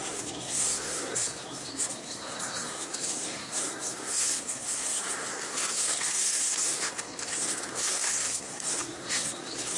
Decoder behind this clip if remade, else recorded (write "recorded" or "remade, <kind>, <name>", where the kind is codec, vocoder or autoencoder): remade, codec, SNAC